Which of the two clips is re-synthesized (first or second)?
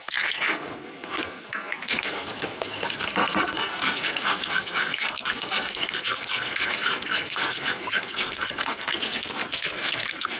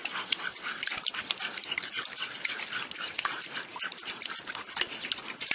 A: first